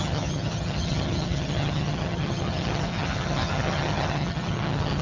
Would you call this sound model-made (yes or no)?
yes